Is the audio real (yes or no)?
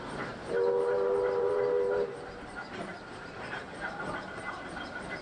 no